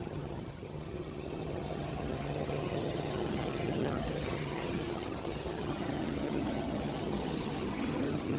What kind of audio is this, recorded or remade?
remade